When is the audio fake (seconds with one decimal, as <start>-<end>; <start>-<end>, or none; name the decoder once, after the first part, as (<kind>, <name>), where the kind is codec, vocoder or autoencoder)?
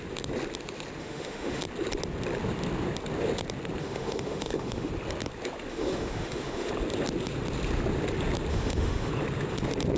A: 1.0-1.6 (autoencoder, DAC-VAE); 3.8-4.9; 5.7-6.7; 8.5-9.1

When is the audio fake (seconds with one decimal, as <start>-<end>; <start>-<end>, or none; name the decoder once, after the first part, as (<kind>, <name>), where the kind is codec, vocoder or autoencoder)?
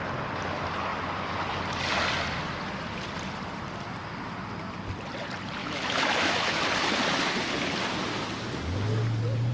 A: 5.6-6.6 (autoencoder, DAC-VAE)